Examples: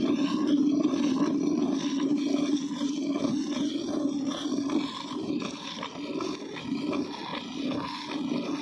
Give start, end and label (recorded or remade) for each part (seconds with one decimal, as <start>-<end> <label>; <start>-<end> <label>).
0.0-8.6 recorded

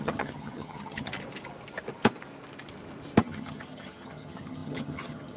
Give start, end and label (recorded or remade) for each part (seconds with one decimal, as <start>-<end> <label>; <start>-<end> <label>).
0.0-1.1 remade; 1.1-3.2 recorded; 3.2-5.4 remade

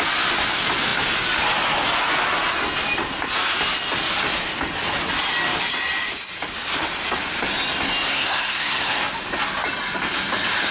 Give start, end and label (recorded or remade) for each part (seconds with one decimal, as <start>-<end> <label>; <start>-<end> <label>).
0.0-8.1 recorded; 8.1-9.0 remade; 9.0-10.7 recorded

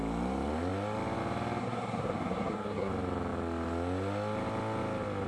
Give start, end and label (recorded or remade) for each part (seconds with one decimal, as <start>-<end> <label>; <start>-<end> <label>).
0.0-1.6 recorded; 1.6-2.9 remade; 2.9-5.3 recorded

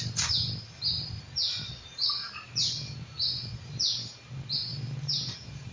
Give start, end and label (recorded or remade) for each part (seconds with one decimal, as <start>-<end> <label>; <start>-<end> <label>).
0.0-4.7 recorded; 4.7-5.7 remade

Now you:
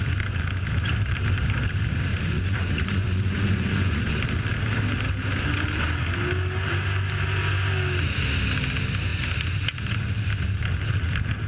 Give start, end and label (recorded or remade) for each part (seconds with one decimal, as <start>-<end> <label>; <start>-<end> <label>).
0.0-2.1 recorded; 2.1-4.2 remade; 4.2-11.5 recorded

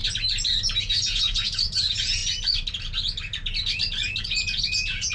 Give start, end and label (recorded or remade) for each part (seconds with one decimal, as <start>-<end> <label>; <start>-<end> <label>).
0.0-0.8 recorded; 0.8-2.2 remade; 2.2-4.2 recorded; 4.2-5.1 remade